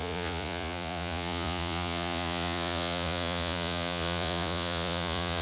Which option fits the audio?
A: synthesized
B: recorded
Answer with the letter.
A